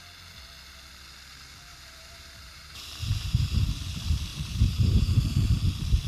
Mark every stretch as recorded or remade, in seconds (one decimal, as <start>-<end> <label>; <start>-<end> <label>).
0.0-1.7 recorded; 1.7-3.6 remade; 3.6-4.3 recorded; 4.3-5.2 remade; 5.2-6.1 recorded